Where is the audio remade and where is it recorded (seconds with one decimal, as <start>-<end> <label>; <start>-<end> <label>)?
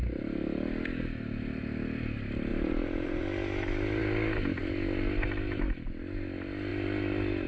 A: 0.0-2.5 recorded; 2.5-3.2 remade; 3.2-7.5 recorded